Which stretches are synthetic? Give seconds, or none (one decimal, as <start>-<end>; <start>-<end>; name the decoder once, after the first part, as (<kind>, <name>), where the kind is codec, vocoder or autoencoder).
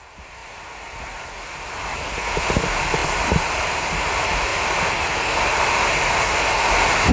0.0-0.4 (vocoder, BigVGAN v2); 2.6-4.5; 5.7-7.1